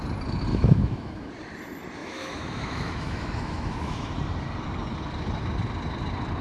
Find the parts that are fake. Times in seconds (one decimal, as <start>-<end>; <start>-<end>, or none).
0.5-1.3; 2.0-4.1